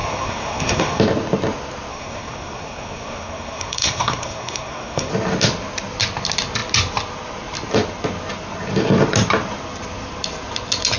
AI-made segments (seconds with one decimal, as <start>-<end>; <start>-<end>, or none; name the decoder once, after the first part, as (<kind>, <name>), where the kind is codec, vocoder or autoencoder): 0.0-1.0 (codec, SNAC); 1.9-5.1